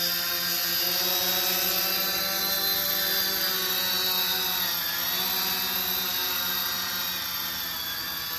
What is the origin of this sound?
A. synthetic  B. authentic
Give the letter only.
B